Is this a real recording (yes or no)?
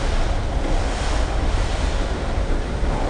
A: yes